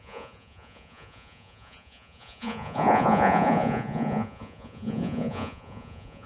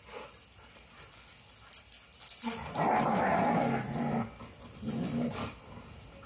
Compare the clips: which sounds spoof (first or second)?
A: first